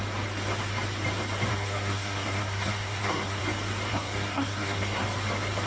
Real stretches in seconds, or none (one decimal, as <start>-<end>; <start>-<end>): 0.0-1.5; 3.4-3.9; 5.0-5.7